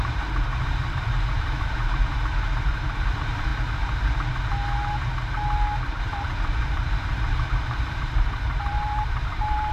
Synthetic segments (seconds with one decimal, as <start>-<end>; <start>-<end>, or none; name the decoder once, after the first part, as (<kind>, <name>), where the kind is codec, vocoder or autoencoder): 0.0-3.5 (vocoder, BigVGAN v2); 6.0-9.7